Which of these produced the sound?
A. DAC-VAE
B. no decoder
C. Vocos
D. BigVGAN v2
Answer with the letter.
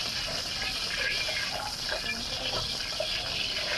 B